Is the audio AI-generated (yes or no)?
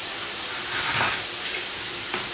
no